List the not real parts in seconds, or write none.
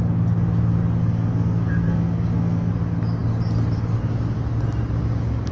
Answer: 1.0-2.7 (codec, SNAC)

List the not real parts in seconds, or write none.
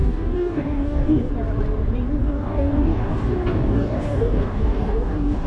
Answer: 0.0-1.3 (codec, DAC); 2.2-5.5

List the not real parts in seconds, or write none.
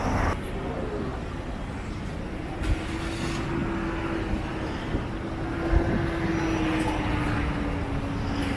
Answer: 1.1-2.8 (vocoder, BigVGAN v2)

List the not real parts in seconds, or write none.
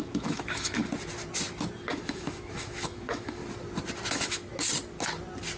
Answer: 0.0-0.8 (autoencoder, DAC-VAE); 1.9-3.4; 4.1-4.5